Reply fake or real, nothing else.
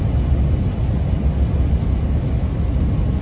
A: real